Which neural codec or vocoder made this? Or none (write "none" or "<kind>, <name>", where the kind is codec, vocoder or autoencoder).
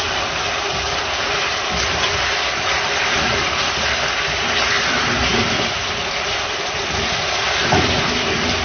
none